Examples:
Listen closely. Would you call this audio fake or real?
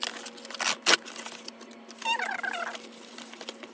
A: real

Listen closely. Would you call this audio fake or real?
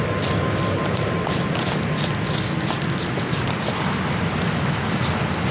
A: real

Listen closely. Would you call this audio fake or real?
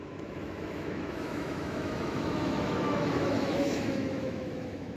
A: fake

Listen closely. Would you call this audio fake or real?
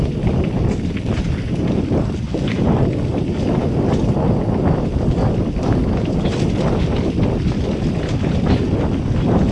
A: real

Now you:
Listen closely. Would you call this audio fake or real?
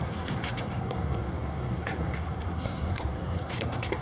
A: fake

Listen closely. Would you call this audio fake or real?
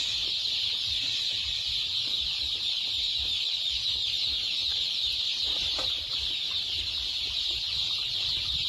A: real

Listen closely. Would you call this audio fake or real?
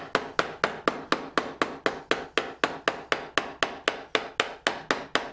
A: real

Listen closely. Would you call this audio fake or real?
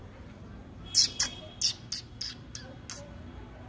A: real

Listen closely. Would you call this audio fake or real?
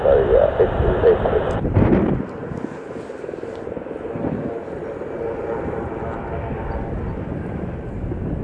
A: real